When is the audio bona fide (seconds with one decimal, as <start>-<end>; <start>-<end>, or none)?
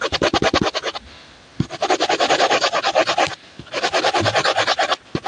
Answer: 0.0-5.3